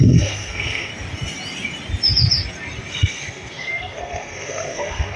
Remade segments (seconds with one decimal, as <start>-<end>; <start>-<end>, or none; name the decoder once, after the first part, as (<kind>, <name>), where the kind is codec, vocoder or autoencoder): 0.0-0.9 (codec, SNAC); 2.9-5.2